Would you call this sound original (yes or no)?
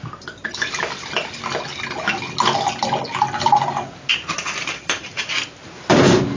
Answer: yes